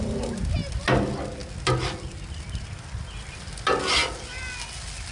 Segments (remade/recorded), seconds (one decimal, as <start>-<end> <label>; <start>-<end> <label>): 0.0-5.1 recorded